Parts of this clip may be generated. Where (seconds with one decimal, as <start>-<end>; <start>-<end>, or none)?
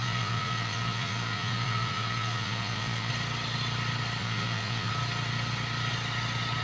0.0-3.1; 4.2-4.9